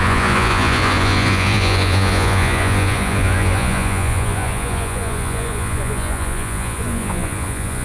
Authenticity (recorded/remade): remade